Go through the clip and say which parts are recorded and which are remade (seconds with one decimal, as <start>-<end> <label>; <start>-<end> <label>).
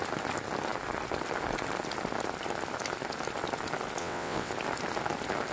0.0-4.0 recorded; 4.0-4.5 remade; 4.5-5.5 recorded